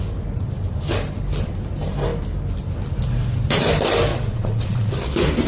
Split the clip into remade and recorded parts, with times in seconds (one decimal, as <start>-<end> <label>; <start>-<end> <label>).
0.0-4.1 recorded; 4.1-4.9 remade; 4.9-5.5 recorded